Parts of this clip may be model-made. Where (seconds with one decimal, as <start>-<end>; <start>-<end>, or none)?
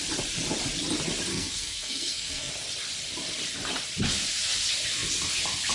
1.3-2.5